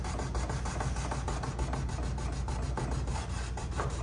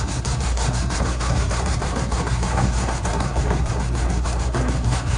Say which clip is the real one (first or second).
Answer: first